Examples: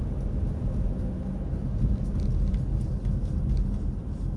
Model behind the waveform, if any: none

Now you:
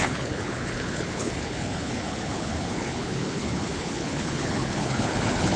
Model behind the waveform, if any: codec, HILCodec